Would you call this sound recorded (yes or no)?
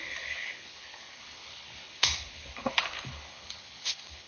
no